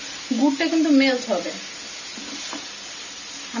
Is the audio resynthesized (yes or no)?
no